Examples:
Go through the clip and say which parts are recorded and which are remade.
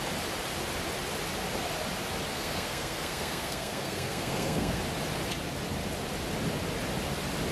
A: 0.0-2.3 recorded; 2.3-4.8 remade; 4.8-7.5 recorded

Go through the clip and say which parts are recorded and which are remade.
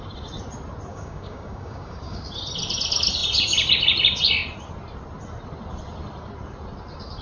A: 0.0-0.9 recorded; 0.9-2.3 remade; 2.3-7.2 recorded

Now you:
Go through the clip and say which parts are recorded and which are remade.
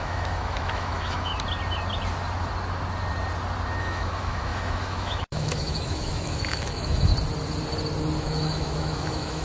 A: 0.0-1.3 remade; 1.3-3.8 recorded; 3.8-7.1 remade; 7.1-8.2 recorded; 8.2-9.4 remade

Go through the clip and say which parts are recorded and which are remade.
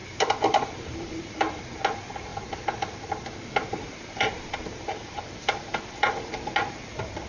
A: 0.0-1.6 remade; 1.6-3.7 recorded; 3.7-6.3 remade; 6.3-7.3 recorded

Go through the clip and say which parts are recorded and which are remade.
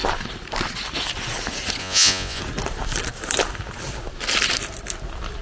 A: 0.0-1.8 recorded; 1.8-2.4 remade; 2.4-5.4 recorded